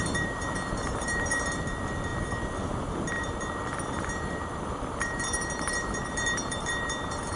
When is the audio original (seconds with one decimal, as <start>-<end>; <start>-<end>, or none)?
2.1-3.1